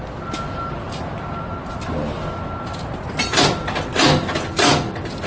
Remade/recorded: recorded